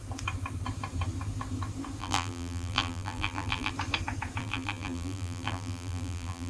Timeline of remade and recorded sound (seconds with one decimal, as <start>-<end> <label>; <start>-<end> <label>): 0.0-2.0 recorded; 2.0-3.7 remade; 3.7-4.4 recorded; 4.4-6.5 remade